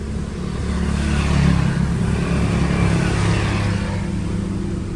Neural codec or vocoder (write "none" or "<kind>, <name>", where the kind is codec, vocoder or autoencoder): none